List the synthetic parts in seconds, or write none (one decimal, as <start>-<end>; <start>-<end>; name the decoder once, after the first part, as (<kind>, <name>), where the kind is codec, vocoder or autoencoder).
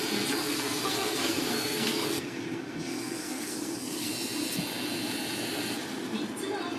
0.4-4.1 (codec, SNAC)